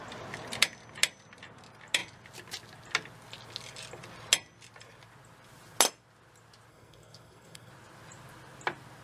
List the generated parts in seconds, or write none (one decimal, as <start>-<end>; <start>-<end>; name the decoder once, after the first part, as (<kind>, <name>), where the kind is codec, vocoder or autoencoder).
6.7-7.7 (codec, SNAC)